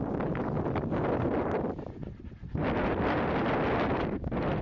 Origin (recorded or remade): recorded